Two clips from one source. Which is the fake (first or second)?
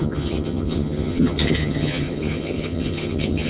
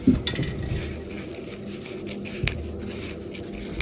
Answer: first